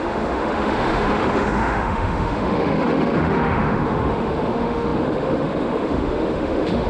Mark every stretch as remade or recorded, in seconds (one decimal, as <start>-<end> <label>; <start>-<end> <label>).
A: 0.0-6.9 remade